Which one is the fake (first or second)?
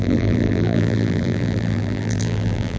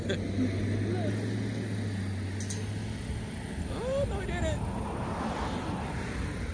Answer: first